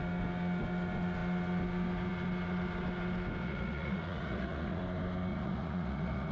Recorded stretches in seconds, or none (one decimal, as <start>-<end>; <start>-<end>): 0.0-3.4; 4.8-5.3